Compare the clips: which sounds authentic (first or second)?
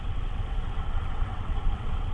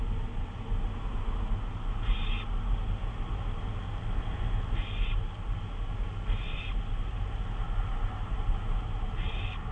second